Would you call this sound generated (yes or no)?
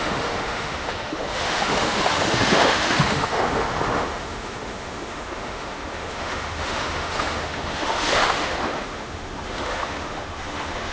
yes